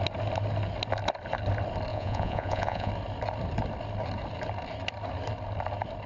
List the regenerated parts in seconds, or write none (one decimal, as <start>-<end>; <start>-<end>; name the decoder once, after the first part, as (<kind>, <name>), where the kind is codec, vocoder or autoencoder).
1.9-2.9 (vocoder, Vocos)